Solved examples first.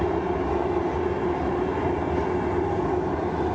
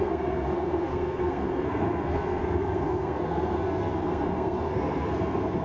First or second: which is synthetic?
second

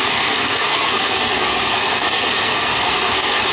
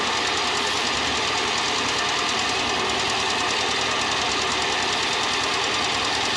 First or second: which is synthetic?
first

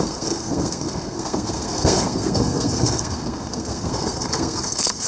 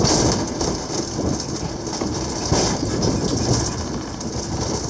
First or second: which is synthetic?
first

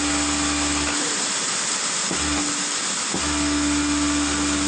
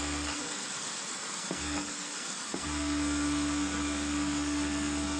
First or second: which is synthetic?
second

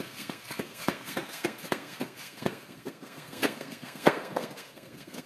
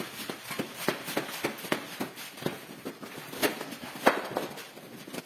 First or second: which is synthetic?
first